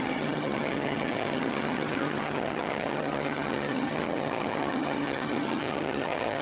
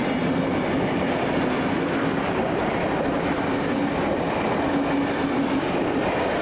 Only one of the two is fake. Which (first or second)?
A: first